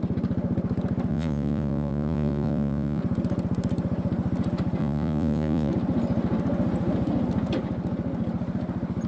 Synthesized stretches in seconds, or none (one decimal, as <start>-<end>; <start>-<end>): 1.1-3.0; 4.8-5.7